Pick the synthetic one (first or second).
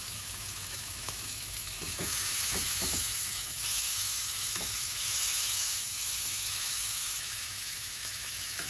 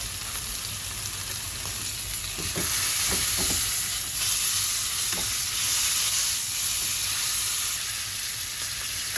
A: first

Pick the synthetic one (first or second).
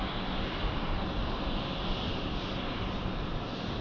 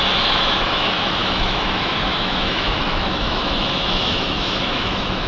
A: second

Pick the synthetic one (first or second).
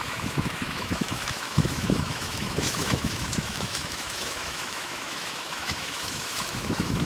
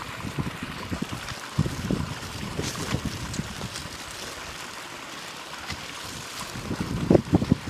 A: first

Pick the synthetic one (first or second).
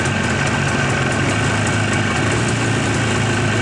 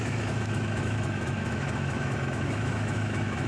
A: second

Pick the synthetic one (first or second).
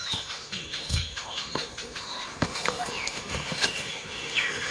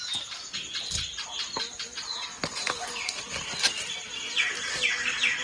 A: first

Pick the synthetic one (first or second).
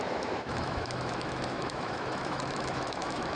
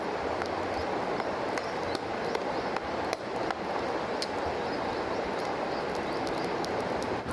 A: first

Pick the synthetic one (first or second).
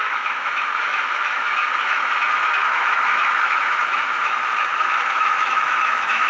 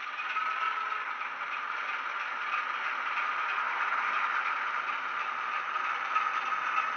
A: first